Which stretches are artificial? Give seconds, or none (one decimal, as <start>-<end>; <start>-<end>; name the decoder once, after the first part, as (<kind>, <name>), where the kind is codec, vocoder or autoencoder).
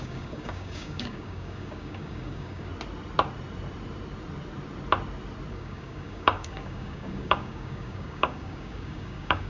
0.0-2.7 (codec, DAC); 5.5-9.5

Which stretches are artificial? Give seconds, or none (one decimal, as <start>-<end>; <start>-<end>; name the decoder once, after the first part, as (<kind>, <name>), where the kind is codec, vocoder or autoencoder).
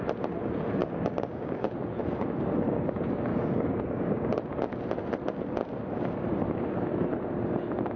0.8-1.7 (codec, DAC); 3.3-4.3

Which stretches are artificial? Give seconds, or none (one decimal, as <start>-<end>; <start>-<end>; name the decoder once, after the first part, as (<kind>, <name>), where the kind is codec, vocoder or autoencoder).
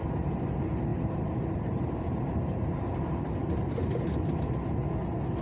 0.9-3.2 (vocoder, BigVGAN v2)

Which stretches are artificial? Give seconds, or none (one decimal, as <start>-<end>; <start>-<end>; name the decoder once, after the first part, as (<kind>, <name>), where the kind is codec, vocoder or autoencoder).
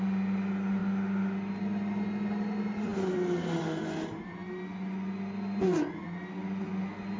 none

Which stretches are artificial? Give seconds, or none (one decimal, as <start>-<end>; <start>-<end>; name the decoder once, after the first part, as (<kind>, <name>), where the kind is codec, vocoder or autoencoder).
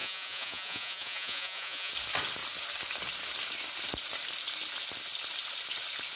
0.0-1.9 (vocoder, Vocos)